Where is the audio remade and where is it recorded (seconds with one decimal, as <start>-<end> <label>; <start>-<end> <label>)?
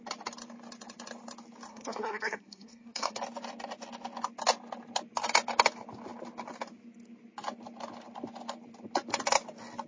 0.0-1.7 recorded; 1.7-3.2 remade; 3.2-9.9 recorded